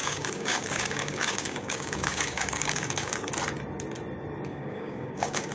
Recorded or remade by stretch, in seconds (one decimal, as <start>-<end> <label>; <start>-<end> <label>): 0.0-3.3 remade; 3.3-4.5 recorded; 4.5-5.5 remade